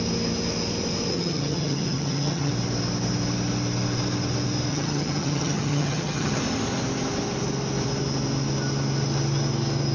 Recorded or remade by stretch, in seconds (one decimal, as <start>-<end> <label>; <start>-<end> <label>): 0.0-1.1 recorded; 1.1-2.5 remade; 2.5-4.7 recorded; 4.7-6.4 remade; 6.4-9.9 recorded